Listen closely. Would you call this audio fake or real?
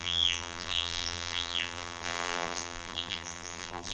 fake